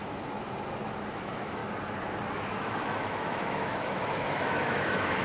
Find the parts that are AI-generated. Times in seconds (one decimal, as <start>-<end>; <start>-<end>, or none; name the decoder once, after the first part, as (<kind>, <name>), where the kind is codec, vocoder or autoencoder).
1.1-1.6 (autoencoder, DAC-VAE); 2.3-5.2